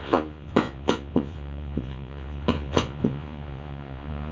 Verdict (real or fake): fake